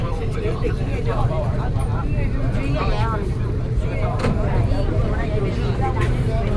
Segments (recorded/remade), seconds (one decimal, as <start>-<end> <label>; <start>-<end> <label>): 0.0-2.1 remade; 2.1-4.5 recorded; 4.5-5.4 remade; 5.4-6.6 recorded